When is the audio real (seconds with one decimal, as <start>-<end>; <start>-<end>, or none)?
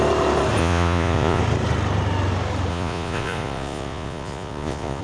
0.0-0.6; 1.4-2.7